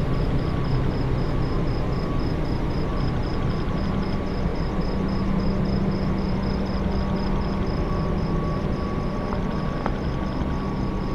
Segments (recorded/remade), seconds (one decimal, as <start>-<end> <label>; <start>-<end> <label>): 0.0-2.9 recorded; 2.9-3.8 remade; 3.8-11.1 recorded

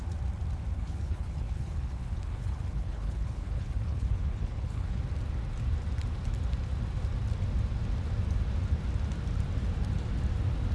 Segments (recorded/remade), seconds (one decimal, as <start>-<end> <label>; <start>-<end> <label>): 0.0-0.7 recorded; 0.7-5.0 remade; 5.0-10.7 recorded

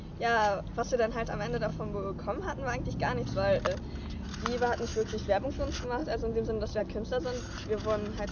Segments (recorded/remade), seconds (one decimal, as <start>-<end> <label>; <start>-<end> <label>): 0.0-4.9 recorded; 4.9-5.5 remade; 5.5-6.0 recorded; 6.0-6.8 remade; 6.8-8.3 recorded